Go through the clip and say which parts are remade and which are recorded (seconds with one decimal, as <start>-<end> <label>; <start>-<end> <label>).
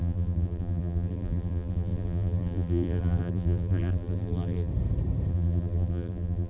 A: 0.0-4.7 remade; 4.7-5.3 recorded; 5.3-6.5 remade